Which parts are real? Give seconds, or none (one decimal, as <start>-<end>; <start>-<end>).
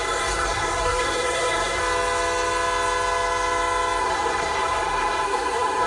1.8-4.0